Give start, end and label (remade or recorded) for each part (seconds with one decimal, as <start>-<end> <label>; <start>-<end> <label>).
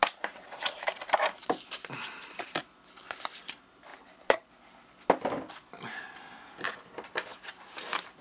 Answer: 0.0-2.6 remade; 2.6-3.9 recorded; 3.9-4.5 remade; 4.5-7.3 recorded; 7.3-8.2 remade